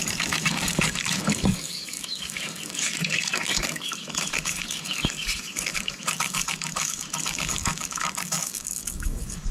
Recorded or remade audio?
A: remade